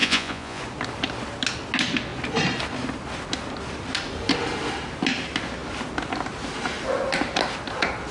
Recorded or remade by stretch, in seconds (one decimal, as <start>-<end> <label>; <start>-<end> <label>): 0.0-0.6 remade; 0.6-8.1 recorded